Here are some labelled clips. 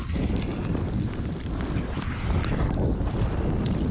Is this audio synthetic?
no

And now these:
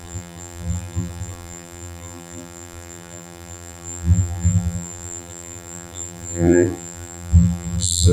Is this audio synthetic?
yes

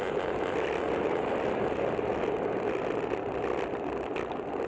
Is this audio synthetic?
no